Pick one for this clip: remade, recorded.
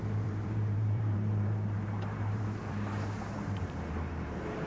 remade